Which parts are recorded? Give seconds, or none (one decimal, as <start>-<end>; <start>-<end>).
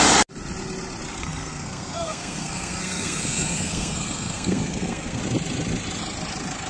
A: 0.0-1.2; 5.2-6.7